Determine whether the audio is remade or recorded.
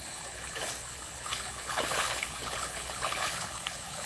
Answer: remade